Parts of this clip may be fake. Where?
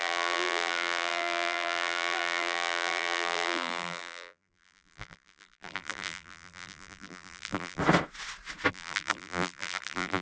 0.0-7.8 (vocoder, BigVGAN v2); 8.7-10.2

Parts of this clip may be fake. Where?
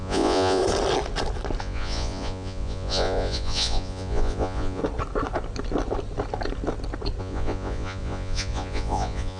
0.0-0.6 (vocoder, Vocos); 1.6-4.8; 7.2-9.4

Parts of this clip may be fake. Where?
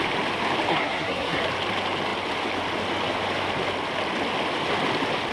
0.7-1.4 (codec, SNAC)